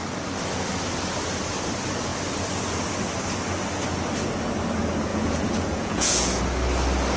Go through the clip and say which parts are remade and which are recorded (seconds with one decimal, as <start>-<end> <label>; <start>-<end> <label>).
0.0-5.1 recorded; 5.1-6.4 remade; 6.4-7.2 recorded